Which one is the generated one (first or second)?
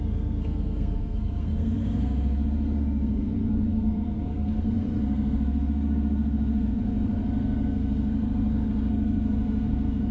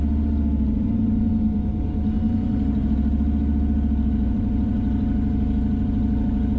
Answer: first